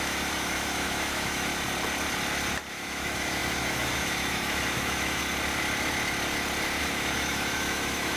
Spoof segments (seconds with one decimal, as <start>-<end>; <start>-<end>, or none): 0.0-1.5; 2.7-5.2; 6.8-8.2